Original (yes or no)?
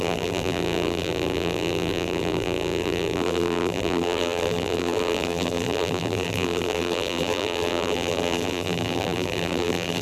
no